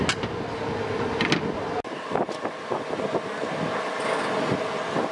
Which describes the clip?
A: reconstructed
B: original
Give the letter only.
B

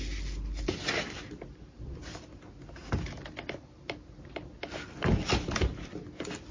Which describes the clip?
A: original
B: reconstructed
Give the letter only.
A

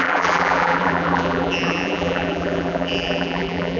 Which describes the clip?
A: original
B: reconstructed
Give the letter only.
B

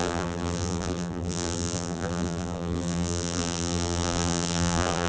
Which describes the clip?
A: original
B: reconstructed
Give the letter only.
B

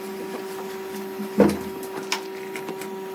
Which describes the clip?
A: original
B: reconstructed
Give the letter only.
A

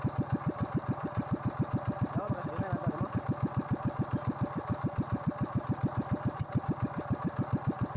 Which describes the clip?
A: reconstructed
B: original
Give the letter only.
A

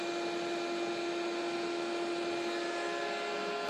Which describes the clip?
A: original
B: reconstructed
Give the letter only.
A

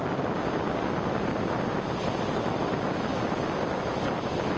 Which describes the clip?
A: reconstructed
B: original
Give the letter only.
B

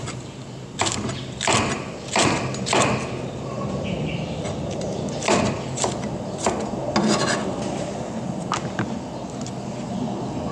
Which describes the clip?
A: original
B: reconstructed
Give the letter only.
A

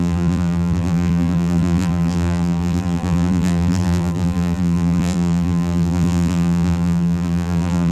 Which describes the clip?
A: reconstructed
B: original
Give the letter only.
A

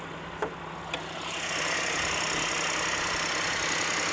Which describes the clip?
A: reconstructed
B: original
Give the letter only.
B